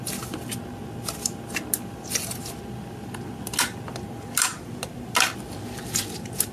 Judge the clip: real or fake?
real